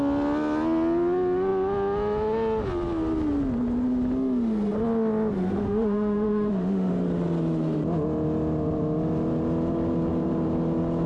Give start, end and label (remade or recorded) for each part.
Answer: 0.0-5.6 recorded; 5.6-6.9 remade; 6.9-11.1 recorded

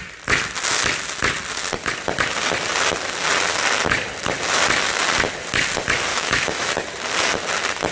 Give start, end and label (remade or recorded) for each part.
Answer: 0.0-6.1 recorded; 6.1-6.7 remade; 6.7-7.9 recorded

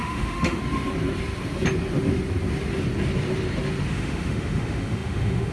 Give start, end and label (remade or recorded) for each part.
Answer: 0.0-0.6 remade; 0.6-3.9 recorded; 3.9-5.5 remade

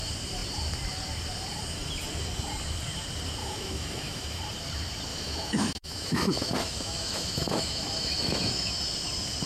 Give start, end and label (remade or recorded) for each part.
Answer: 0.0-3.4 recorded; 3.4-4.4 remade; 4.4-5.1 recorded; 5.1-8.7 remade; 8.7-9.5 recorded

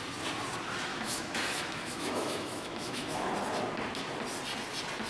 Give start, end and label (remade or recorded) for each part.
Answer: 0.0-0.9 recorded; 0.9-3.3 remade; 3.3-5.1 recorded

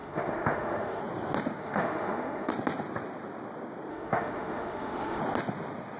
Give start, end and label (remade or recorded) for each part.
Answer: 0.0-1.0 remade; 1.0-1.6 recorded; 1.6-2.5 remade; 2.5-3.9 recorded; 3.9-5.2 remade; 5.2-6.0 recorded